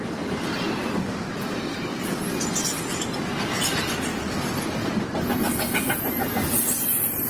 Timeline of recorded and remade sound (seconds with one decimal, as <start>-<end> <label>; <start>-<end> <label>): 0.0-4.1 recorded; 4.1-4.8 remade; 4.8-7.3 recorded